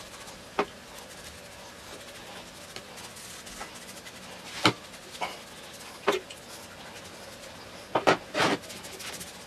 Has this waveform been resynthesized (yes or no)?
no